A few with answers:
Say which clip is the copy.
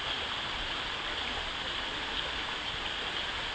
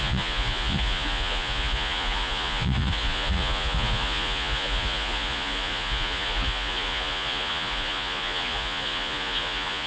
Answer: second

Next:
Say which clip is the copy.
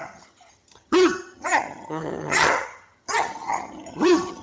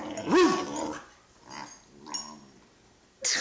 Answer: first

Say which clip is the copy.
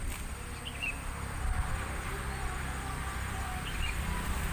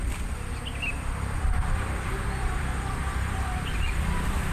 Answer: second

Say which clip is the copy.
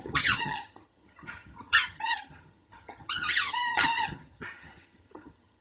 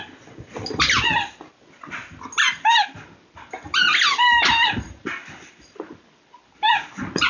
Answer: first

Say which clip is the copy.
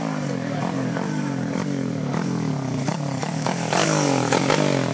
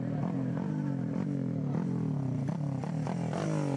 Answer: first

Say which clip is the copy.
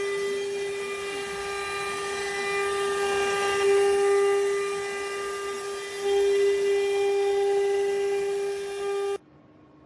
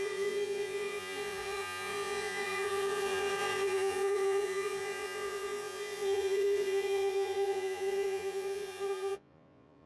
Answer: second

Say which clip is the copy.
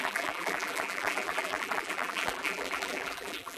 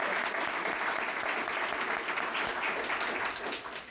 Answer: first